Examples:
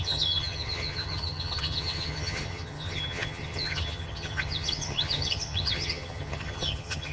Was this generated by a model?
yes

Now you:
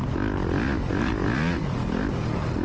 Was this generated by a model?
no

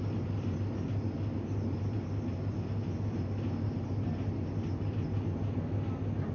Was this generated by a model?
no